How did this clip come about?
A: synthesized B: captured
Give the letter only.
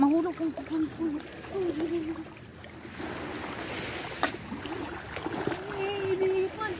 B